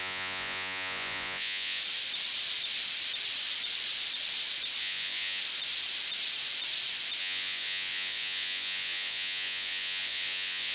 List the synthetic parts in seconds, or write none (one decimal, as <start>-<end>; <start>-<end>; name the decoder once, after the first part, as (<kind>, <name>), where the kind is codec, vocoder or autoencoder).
0.0-1.8 (vocoder, Vocos); 4.8-5.4; 7.2-10.7